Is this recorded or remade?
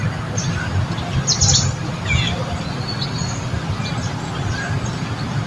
recorded